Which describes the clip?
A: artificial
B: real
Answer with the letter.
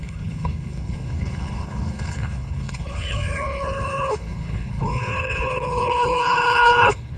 A